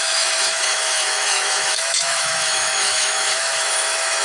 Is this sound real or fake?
fake